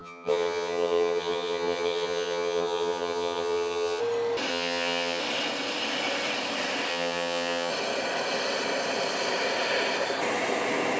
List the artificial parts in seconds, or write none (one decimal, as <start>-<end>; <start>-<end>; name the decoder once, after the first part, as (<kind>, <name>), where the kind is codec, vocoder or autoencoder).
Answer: 0.0-4.0 (vocoder, HiFi-GAN); 4.5-5.2; 6.9-7.7

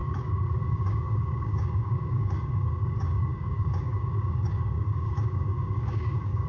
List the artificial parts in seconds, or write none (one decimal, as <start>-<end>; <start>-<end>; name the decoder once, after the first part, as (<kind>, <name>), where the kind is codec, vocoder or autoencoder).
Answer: 0.0-6.5 (codec, DAC)